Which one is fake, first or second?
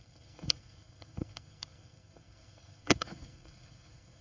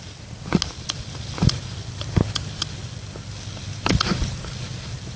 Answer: first